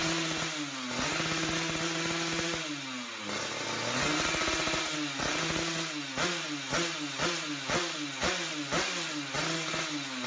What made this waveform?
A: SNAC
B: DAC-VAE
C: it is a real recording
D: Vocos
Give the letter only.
C